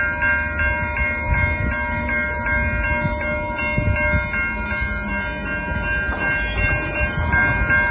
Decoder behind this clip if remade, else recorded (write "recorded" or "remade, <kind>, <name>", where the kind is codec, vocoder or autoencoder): recorded